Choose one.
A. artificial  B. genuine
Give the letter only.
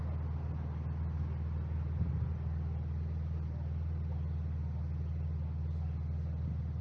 B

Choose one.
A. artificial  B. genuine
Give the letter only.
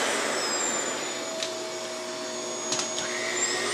B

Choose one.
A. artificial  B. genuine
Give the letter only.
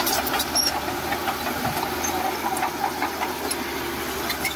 B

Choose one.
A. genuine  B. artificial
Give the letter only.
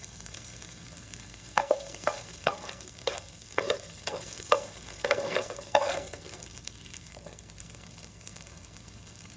B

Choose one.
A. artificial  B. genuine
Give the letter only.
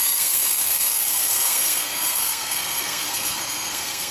A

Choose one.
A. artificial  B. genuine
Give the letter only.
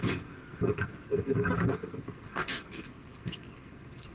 A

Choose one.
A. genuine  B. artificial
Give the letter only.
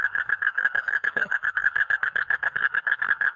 B